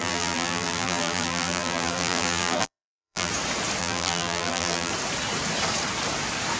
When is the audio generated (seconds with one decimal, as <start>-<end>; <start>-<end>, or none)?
0.0-3.3; 3.8-4.9